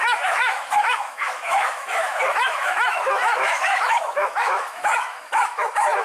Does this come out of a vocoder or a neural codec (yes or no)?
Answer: yes